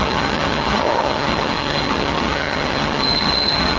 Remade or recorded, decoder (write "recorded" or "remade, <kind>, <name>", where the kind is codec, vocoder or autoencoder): remade, vocoder, HiFi-GAN